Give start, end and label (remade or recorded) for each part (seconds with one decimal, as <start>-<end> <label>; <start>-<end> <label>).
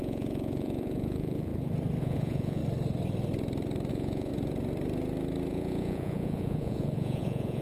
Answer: 0.0-1.5 remade; 1.5-2.0 recorded; 2.0-2.6 remade; 2.6-3.9 recorded; 3.9-4.3 remade; 4.3-5.5 recorded; 5.5-7.6 remade